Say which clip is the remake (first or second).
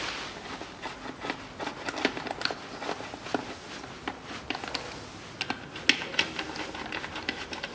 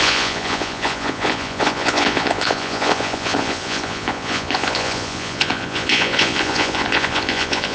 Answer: second